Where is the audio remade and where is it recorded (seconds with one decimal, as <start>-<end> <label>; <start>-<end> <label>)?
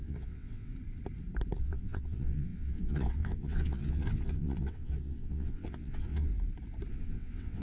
0.0-0.7 remade; 0.7-1.6 recorded; 1.6-6.3 remade; 6.3-6.9 recorded; 6.9-7.6 remade